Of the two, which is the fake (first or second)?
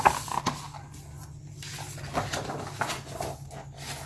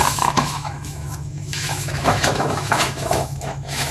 second